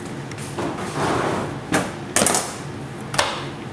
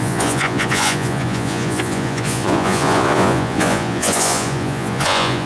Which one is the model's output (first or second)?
second